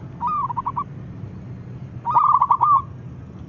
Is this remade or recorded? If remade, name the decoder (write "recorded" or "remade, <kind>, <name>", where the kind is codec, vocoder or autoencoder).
recorded